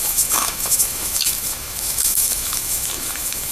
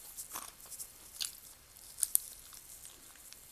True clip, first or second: second